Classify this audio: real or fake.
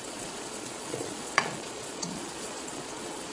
fake